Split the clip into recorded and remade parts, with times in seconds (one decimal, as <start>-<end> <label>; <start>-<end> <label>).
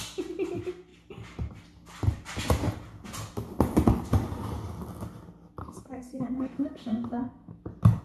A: 0.0-5.6 recorded; 5.6-7.6 remade; 7.6-8.0 recorded